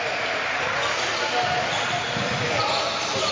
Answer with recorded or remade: recorded